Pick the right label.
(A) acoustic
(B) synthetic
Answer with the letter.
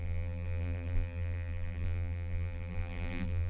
B